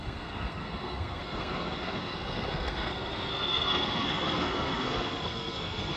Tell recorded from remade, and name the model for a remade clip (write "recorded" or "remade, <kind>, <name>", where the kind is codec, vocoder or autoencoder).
remade, codec, SNAC